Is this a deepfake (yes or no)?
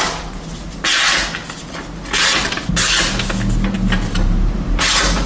no